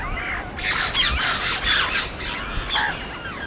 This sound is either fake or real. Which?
real